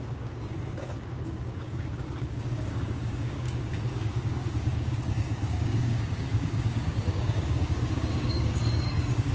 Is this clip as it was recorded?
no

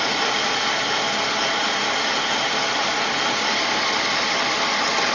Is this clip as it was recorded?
yes